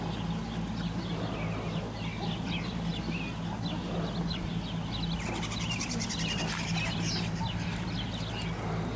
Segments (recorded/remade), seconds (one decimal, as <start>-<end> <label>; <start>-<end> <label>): 0.0-9.0 recorded